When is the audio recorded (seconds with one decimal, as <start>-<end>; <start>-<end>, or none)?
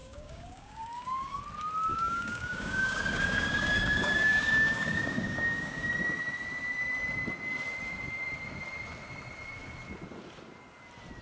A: 1.4-1.9; 5.9-11.2